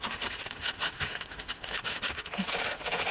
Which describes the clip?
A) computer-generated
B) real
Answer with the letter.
A